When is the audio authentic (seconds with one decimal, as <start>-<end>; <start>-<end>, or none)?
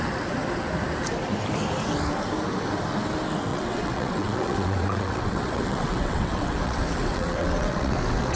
0.0-3.5